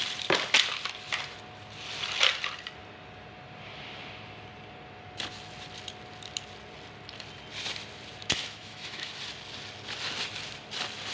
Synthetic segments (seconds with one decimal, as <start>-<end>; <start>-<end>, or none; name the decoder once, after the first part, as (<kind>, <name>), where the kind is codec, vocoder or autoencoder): 8.2-9.1 (autoencoder, DAC-VAE)

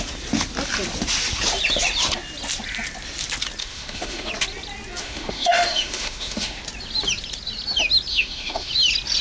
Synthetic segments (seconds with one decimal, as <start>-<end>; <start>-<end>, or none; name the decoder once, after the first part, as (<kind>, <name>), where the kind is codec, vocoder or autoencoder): 3.6-4.3 (autoencoder, DAC-VAE); 5.0-6.6; 8.1-8.7

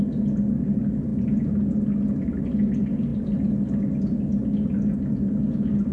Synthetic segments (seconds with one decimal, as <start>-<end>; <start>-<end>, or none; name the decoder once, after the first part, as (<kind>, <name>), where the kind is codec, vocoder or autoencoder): none

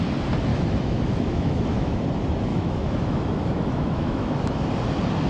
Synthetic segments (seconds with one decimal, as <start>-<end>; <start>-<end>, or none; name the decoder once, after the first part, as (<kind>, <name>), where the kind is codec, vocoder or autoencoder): 0.5-2.0 (autoencoder, DAC-VAE); 2.5-4.7

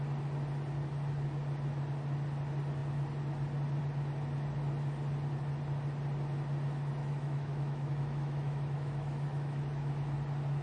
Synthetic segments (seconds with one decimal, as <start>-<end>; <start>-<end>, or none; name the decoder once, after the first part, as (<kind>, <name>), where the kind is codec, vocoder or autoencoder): 7.0-9.9 (autoencoder, DAC-VAE)

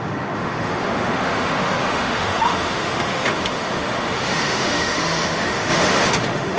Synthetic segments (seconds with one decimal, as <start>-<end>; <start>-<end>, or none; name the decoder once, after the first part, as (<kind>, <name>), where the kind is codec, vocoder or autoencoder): 0.0-6.6 (autoencoder, DAC-VAE)

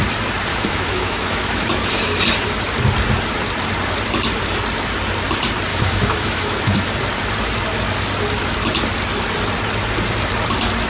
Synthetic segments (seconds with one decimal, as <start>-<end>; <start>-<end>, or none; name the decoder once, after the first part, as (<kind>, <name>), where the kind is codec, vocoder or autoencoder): 0.5-2.2 (autoencoder, DAC-VAE); 5.7-6.9

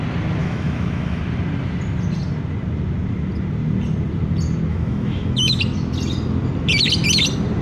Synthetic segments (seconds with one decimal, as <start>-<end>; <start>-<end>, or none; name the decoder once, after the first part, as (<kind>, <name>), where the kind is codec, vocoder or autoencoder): 0.4-1.2 (autoencoder, DAC-VAE); 4.7-5.6